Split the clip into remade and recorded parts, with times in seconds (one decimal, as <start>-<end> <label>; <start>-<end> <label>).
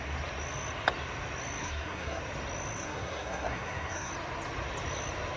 0.0-1.6 recorded; 1.6-2.2 remade; 2.2-2.8 recorded; 2.8-4.1 remade; 4.1-5.4 recorded